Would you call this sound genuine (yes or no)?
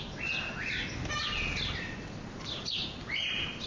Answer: yes